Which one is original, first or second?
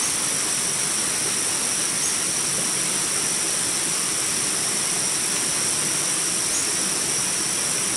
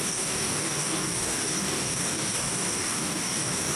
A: first